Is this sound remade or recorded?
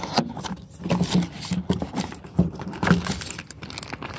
recorded